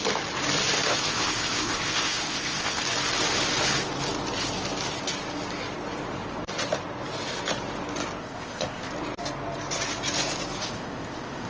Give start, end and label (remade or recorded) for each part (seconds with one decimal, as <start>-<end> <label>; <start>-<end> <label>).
0.0-0.9 recorded; 0.9-2.8 remade; 2.8-8.2 recorded; 8.2-8.9 remade; 8.9-10.6 recorded; 10.6-11.5 remade